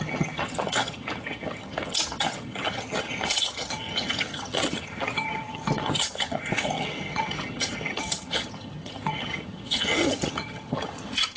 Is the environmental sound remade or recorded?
remade